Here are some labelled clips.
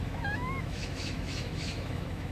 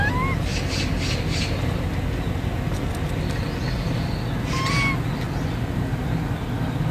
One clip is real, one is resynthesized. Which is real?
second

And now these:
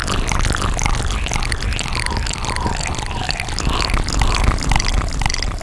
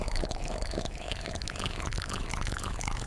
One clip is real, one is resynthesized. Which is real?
first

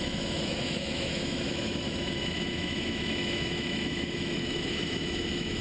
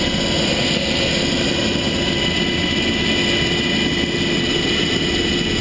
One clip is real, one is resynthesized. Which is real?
second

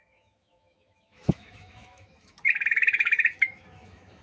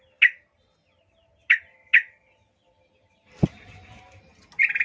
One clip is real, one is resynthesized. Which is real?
second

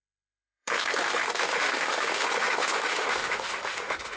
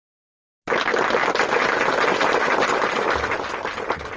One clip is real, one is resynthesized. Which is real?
second